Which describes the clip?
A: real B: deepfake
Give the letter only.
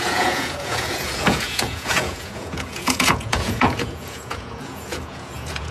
B